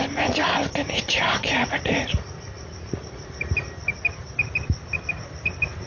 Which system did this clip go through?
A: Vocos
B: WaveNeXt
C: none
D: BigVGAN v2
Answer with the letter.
C